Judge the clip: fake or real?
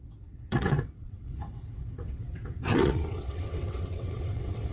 fake